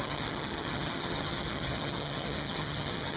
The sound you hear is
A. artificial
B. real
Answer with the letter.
A